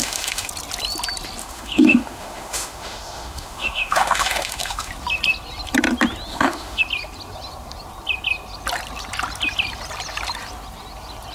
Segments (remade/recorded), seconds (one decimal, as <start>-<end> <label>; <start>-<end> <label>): 0.0-0.5 remade; 0.5-1.4 recorded; 1.4-4.9 remade; 4.9-6.3 recorded; 6.3-6.8 remade; 6.8-11.3 recorded